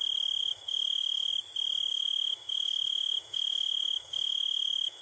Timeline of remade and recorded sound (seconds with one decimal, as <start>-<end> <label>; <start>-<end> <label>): 0.0-0.4 recorded; 0.4-1.3 remade; 1.3-1.9 recorded; 1.9-5.0 remade